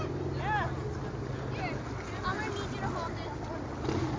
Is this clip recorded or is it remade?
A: recorded